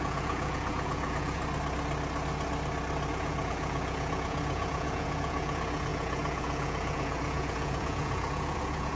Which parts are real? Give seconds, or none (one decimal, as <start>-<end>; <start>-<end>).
1.4-3.1